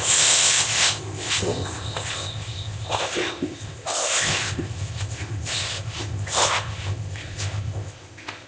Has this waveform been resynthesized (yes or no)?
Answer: yes